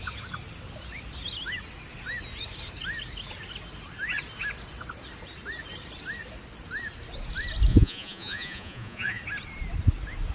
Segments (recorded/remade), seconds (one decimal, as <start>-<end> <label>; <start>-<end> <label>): 0.0-7.7 recorded; 7.7-9.2 remade; 9.2-10.3 recorded

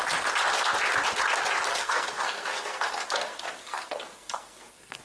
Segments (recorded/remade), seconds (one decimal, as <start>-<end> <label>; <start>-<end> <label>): 0.0-1.7 recorded; 1.7-5.0 remade